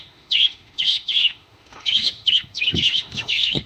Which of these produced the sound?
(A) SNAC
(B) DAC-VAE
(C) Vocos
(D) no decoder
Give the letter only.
B